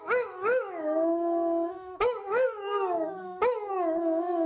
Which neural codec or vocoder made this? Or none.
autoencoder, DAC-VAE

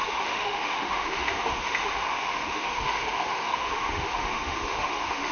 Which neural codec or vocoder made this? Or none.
autoencoder, DAC-VAE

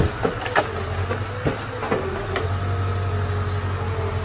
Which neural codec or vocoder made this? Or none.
none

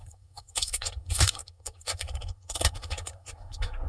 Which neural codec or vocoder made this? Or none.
codec, SNAC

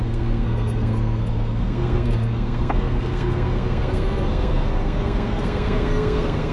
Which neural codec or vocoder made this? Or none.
codec, SNAC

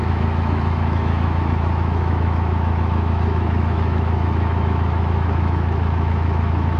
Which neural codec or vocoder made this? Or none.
autoencoder, DAC-VAE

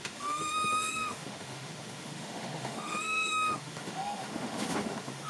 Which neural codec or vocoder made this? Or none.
autoencoder, DAC-VAE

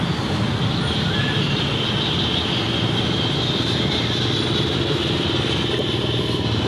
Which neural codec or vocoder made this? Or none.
none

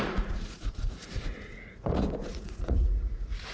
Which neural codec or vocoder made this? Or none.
vocoder, Vocos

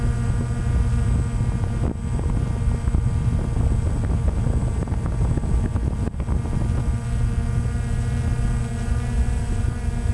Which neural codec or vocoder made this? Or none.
none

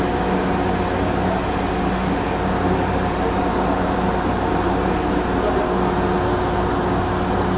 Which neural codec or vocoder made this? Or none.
none